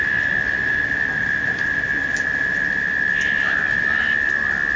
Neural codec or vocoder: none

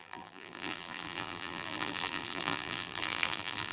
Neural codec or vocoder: vocoder, BigVGAN v2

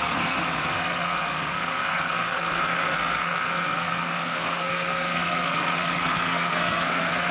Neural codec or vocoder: codec, SNAC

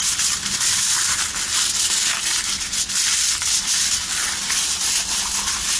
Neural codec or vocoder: none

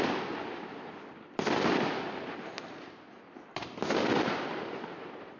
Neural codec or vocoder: none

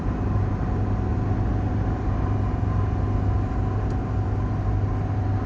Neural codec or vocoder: none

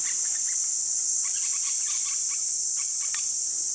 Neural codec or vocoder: none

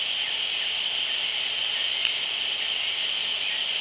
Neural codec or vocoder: none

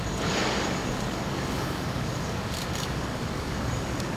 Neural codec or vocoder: codec, DAC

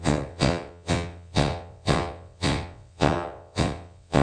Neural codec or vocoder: vocoder, WaveNeXt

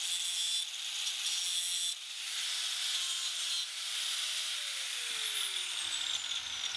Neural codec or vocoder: none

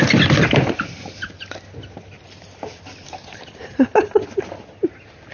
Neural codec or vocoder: none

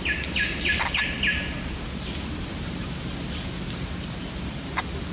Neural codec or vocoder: none